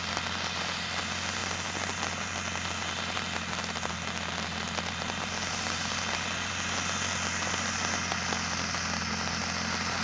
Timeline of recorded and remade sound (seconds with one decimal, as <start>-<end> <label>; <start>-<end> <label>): 0.0-10.0 recorded